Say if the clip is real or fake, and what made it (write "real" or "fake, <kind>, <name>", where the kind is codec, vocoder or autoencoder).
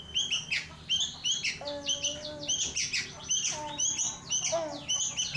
real